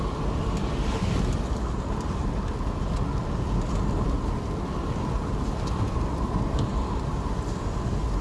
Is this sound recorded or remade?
recorded